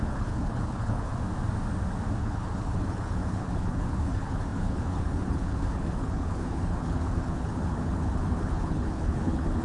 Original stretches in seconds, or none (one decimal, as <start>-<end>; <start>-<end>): 1.1-2.2